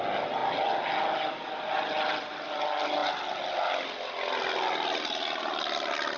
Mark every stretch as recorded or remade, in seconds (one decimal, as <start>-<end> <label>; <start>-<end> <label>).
0.0-6.2 recorded